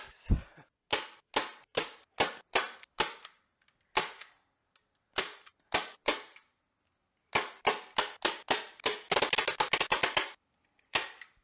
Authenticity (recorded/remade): recorded